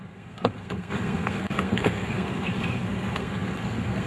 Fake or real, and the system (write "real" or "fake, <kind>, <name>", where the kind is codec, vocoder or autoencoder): fake, codec, SNAC